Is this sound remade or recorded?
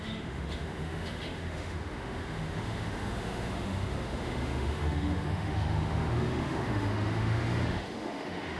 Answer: remade